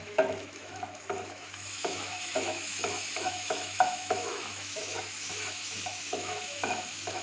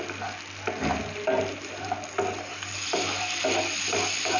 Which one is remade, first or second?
first